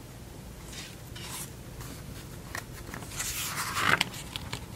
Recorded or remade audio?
recorded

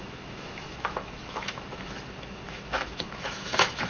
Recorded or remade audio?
remade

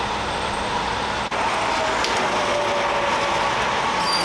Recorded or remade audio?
recorded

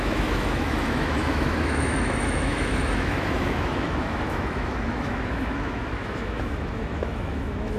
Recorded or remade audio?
remade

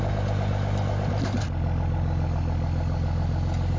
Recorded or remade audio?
recorded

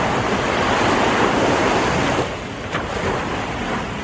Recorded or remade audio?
recorded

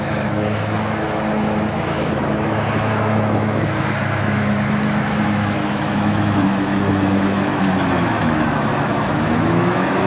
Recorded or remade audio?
remade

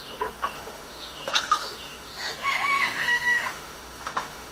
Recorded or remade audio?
remade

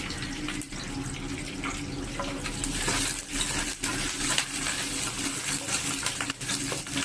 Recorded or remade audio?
recorded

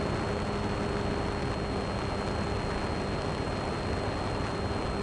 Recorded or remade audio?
recorded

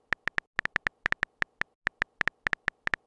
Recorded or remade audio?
recorded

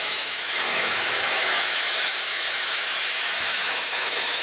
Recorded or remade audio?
remade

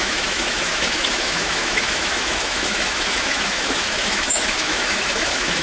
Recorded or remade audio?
remade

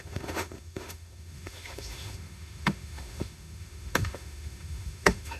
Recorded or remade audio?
remade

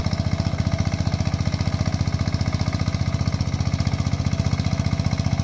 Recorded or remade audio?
recorded